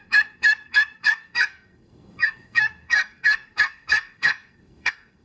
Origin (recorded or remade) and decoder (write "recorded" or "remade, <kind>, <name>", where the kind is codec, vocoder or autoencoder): remade, codec, SNAC